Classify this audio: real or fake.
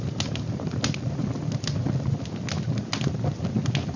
real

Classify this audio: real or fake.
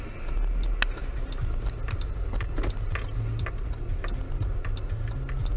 real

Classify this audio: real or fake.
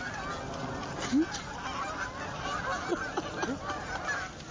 real